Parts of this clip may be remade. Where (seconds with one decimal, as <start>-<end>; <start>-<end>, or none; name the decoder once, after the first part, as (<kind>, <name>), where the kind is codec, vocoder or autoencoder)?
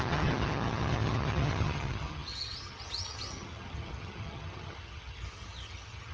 0.0-6.1 (vocoder, HiFi-GAN)